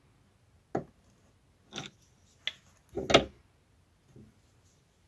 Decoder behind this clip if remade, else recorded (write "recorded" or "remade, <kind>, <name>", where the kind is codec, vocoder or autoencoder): recorded